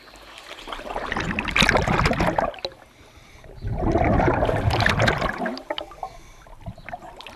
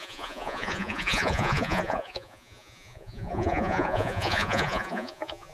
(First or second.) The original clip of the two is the first